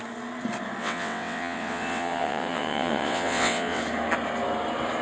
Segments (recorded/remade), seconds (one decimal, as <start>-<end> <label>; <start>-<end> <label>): 0.0-0.8 recorded; 0.8-3.8 remade; 3.8-5.0 recorded

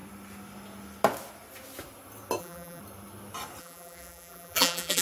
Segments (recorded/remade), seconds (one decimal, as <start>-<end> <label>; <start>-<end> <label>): 0.0-2.4 recorded; 2.4-2.8 remade; 2.8-3.6 recorded; 3.6-5.0 remade

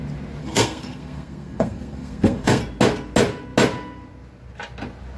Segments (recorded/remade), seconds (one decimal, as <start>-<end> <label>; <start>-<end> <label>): 0.0-0.4 recorded; 0.4-2.6 remade; 2.6-5.2 recorded

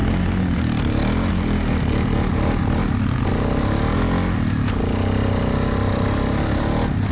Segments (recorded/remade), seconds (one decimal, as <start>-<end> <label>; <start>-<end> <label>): 0.0-7.1 recorded

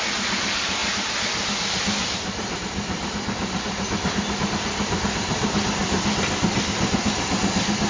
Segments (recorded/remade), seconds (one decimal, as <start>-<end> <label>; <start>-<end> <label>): 0.0-7.9 recorded

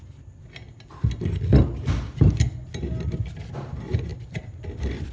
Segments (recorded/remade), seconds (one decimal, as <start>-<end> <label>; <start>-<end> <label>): 0.0-5.1 recorded